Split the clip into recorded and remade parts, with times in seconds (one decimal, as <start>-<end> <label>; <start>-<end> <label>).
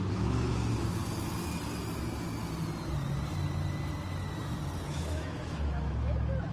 0.0-1.0 remade; 1.0-4.9 recorded; 4.9-6.5 remade